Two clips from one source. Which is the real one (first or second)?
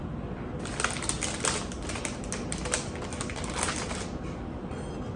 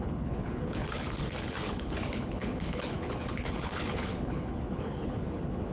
first